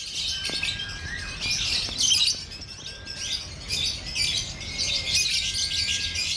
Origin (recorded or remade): recorded